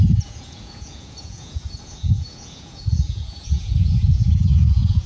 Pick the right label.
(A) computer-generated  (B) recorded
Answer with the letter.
A